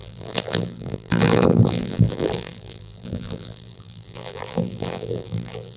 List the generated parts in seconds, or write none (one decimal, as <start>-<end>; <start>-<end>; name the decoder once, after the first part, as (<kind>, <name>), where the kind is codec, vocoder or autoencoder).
0.0-5.8 (vocoder, BigVGAN v2)